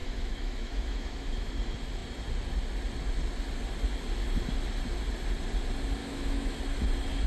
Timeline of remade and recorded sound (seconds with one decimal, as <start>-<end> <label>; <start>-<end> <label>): 0.0-1.5 remade; 1.5-6.0 recorded; 6.0-6.6 remade; 6.6-7.3 recorded